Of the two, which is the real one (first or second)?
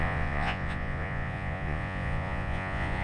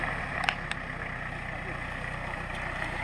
second